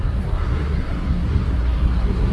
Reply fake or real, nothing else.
fake